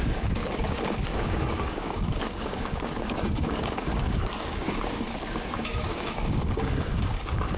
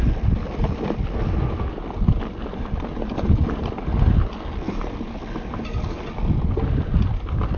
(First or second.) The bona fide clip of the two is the second